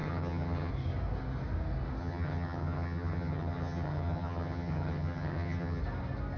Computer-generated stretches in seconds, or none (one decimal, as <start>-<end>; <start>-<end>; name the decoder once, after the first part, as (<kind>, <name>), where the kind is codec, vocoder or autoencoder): 0.0-0.7 (vocoder, HiFi-GAN); 2.0-5.8